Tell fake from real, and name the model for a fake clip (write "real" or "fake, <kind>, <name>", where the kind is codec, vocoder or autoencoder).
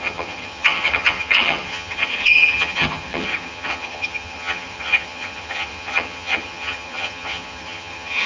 fake, vocoder, HiFi-GAN